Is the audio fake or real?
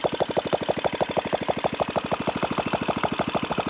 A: real